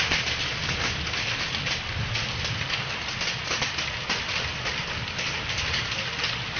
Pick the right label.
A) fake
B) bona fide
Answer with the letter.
B